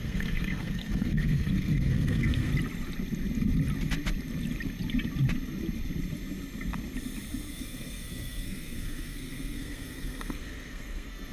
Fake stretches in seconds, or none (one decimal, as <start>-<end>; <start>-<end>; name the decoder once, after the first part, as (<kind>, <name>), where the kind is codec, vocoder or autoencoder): 0.0-2.5 (codec, SNAC); 7.5-11.3